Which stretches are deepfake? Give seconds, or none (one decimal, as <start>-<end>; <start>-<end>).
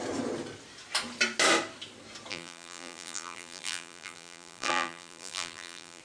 2.3-6.0